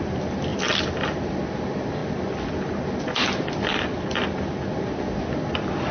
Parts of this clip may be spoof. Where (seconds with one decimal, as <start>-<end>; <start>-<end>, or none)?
none